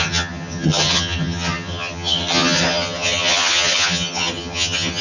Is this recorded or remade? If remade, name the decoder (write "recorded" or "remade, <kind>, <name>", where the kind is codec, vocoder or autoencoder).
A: remade, vocoder, HiFi-GAN